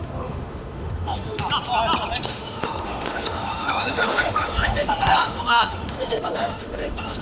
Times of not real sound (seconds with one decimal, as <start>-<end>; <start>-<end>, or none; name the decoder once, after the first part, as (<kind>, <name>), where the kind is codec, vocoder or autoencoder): 0.0-1.4 (autoencoder, DAC-VAE); 2.2-7.2